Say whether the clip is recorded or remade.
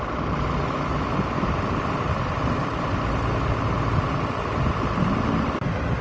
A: recorded